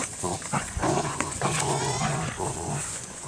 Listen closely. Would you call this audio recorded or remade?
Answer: remade